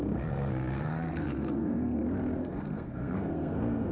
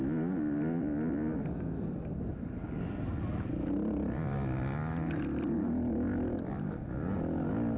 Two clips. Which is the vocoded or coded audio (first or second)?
first